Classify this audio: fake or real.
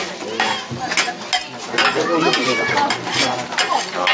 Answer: real